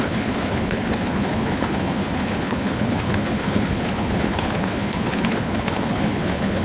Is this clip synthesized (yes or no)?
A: yes